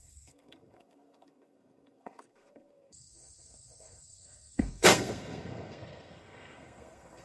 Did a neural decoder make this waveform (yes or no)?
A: yes